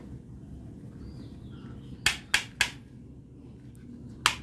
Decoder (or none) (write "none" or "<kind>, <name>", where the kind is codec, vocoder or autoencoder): none